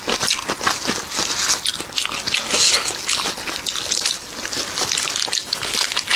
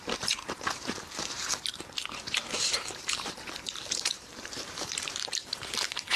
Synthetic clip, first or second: second